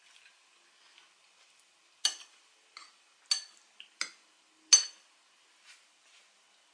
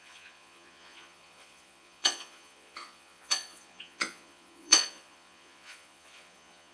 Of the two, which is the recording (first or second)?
first